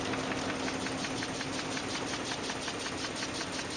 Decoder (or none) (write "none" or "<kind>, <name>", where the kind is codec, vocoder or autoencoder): none